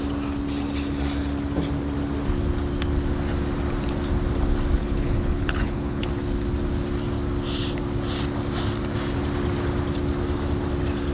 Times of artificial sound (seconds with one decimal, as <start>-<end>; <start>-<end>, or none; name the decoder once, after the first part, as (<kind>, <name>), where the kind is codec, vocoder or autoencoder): 4.8-6.1 (codec, HILCodec)